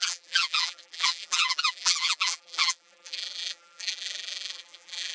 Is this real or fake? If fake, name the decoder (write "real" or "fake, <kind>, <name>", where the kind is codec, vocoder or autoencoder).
fake, vocoder, BigVGAN v2